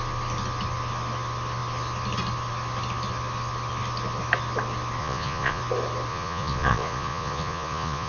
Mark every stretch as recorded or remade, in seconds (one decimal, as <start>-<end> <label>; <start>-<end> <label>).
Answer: 0.0-5.0 recorded; 5.0-5.6 remade; 5.6-6.1 recorded; 6.1-8.1 remade